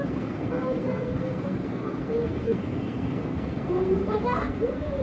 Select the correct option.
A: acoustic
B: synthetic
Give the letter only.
B